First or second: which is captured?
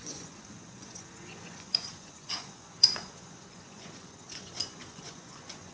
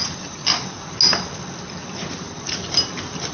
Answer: second